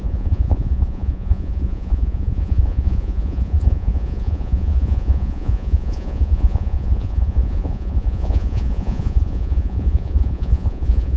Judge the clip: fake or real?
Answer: fake